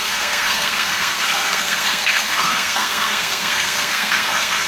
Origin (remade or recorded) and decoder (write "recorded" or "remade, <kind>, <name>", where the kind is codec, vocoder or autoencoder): remade, codec, SNAC